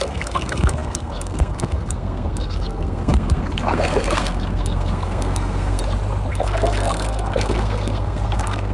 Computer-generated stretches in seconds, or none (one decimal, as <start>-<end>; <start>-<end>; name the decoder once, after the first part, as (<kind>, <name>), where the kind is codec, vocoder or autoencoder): 0.0-5.8 (codec, SNAC); 6.3-8.7